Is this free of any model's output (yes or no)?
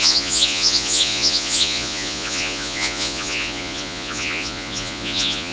no